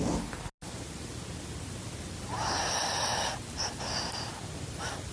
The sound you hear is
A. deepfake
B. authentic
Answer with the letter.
B